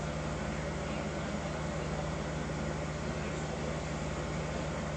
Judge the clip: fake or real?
real